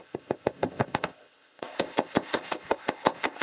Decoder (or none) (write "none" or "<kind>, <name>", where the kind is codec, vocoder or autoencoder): codec, ZipCodec